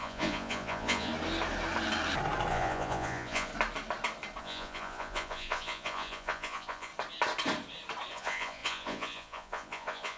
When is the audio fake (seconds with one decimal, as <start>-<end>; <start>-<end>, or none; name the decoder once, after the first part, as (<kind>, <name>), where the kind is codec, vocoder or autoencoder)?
0.0-1.1 (vocoder, Vocos); 2.5-3.5; 4.4-6.9; 8.1-10.2